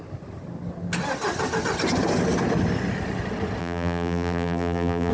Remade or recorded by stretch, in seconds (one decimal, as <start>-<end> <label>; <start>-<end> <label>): 0.0-3.6 recorded; 3.6-5.1 remade